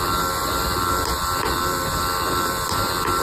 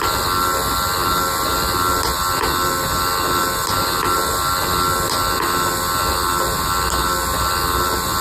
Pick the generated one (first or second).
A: first